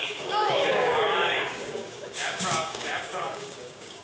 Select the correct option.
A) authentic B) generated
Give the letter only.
B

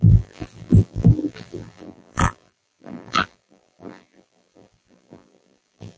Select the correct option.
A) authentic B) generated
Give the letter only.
B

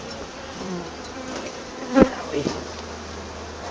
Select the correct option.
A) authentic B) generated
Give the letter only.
B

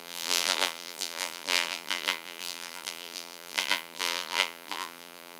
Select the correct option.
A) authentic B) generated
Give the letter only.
B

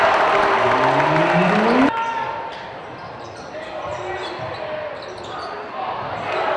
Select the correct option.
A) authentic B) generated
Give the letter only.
A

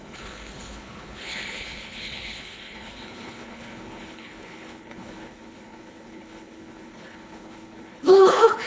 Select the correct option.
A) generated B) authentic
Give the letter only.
A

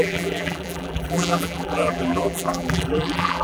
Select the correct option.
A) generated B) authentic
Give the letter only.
A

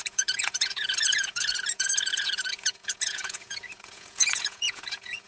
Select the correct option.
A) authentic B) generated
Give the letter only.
B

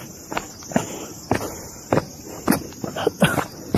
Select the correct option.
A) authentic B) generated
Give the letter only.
A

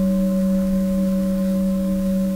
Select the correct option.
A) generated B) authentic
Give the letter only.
A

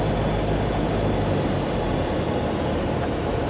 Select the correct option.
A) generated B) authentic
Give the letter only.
B